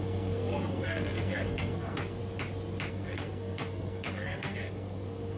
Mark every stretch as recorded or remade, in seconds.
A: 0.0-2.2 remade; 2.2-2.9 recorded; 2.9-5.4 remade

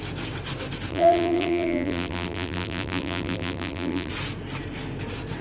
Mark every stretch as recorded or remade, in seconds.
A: 0.0-0.9 recorded; 0.9-4.1 remade; 4.1-5.4 recorded

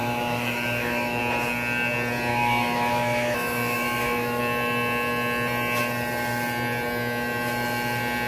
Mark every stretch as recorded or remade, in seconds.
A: 0.0-1.2 remade; 1.2-2.3 recorded; 2.3-4.4 remade; 4.4-8.3 recorded

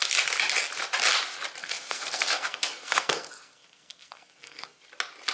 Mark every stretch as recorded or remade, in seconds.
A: 0.0-1.6 recorded; 1.6-4.8 remade; 4.8-5.3 recorded

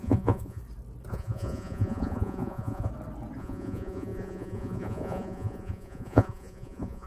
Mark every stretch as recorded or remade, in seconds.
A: 0.0-0.6 remade; 0.6-1.1 recorded; 1.1-2.9 remade; 2.9-3.4 recorded; 3.4-7.1 remade